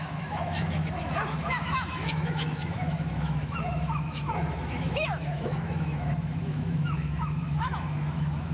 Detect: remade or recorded remade